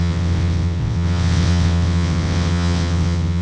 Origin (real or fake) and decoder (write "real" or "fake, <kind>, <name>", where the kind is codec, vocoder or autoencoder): fake, vocoder, WaveNeXt